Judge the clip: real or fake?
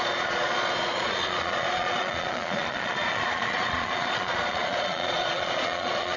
fake